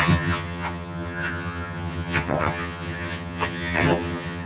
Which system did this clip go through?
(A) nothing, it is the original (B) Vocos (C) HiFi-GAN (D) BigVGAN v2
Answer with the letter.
C